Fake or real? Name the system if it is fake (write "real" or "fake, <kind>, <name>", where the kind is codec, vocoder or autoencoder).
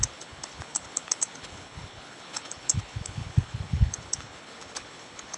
fake, codec, HILCodec